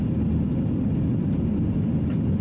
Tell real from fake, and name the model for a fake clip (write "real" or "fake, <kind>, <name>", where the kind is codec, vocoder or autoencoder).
real